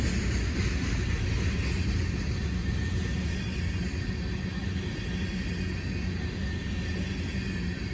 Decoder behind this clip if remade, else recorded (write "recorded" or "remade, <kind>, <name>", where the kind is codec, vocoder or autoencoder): recorded